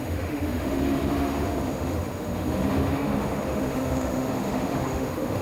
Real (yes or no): no